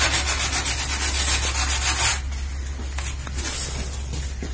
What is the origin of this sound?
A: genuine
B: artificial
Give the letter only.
A